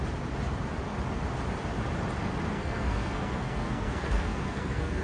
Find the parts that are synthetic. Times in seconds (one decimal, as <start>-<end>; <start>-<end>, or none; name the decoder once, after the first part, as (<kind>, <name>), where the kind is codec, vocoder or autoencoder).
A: 2.5-5.0 (codec, SNAC)